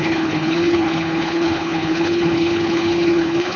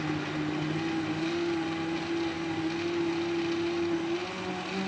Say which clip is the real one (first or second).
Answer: second